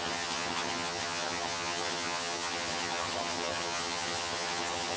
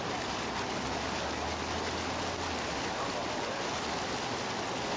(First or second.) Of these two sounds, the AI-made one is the first